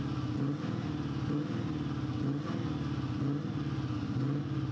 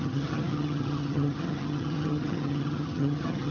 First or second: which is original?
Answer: first